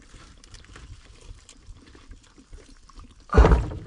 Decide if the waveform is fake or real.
fake